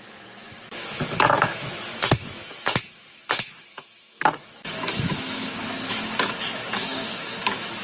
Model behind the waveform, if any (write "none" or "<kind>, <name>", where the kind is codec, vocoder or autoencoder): autoencoder, DAC-VAE